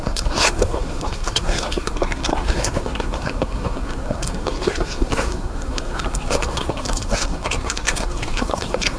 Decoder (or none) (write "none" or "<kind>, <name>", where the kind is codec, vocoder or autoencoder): codec, SNAC